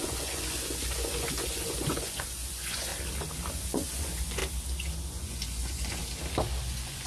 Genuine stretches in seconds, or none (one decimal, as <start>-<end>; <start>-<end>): 2.9-3.5; 4.4-5.1; 6.0-6.6